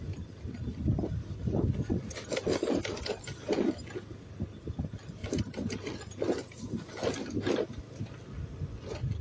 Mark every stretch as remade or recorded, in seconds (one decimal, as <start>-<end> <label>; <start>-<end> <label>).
0.0-9.2 recorded